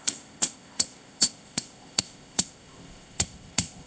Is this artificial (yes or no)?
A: yes